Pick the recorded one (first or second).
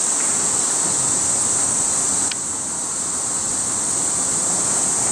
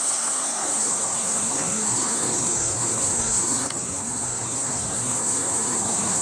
first